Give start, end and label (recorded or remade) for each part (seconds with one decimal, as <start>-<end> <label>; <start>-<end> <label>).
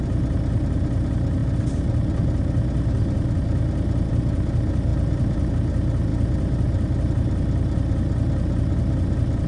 0.0-4.9 recorded; 4.9-5.5 remade; 5.5-9.5 recorded